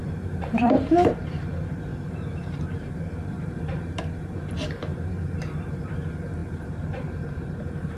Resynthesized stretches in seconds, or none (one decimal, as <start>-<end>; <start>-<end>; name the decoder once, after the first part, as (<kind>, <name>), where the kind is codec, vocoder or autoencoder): 0.0-1.5 (vocoder, BigVGAN v2); 1.9-4.0; 4.9-5.4; 6.4-8.0